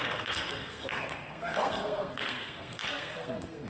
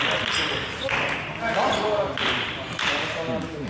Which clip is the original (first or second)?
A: second